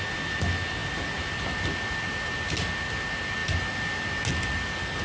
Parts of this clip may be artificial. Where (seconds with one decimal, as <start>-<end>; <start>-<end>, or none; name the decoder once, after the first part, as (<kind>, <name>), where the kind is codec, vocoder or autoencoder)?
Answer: none